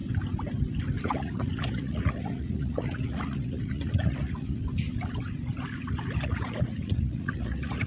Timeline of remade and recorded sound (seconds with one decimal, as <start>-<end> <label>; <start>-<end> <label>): 0.0-1.0 recorded; 1.0-4.6 remade; 4.6-6.2 recorded; 6.2-7.9 remade